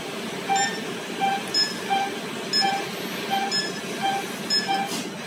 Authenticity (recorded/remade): recorded